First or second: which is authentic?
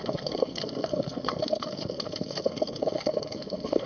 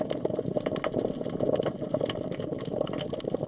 second